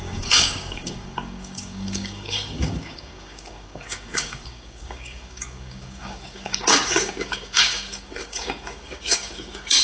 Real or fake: fake